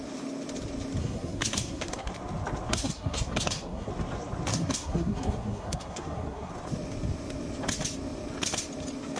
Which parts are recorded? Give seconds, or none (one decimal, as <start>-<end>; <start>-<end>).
0.0-1.0; 2.1-2.7; 3.9-4.5; 6.5-9.2